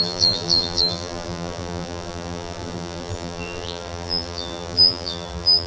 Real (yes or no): no